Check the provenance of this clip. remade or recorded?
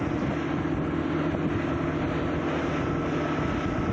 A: recorded